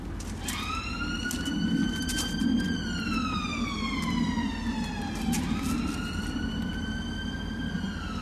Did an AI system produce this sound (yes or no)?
no